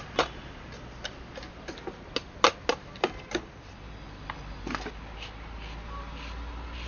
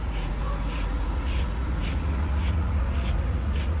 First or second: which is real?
first